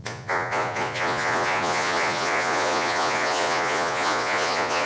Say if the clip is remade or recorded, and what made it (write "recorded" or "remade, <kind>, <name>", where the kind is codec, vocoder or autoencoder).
remade, vocoder, Vocos